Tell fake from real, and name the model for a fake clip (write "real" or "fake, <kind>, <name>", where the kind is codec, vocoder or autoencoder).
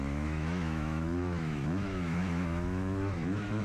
fake, autoencoder, DAC-VAE